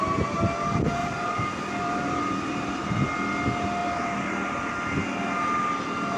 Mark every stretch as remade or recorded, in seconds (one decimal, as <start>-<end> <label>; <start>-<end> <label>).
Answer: 0.0-1.0 recorded; 1.0-2.8 remade; 2.8-3.8 recorded; 3.8-4.6 remade; 4.6-6.2 recorded